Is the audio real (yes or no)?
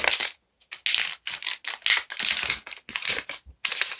yes